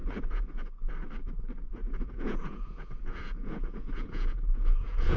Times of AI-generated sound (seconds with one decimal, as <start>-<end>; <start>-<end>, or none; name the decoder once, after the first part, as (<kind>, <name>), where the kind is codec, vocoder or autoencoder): 0.0-0.7 (vocoder, Vocos); 1.8-5.2